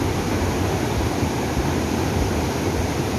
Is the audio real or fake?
real